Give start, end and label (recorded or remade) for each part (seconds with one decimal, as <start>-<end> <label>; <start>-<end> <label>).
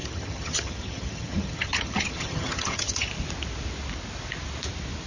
0.0-3.1 remade; 3.1-5.1 recorded